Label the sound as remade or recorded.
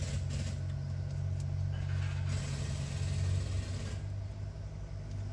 recorded